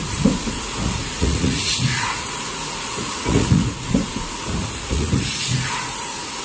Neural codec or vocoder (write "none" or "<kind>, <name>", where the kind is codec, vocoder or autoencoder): vocoder, Vocos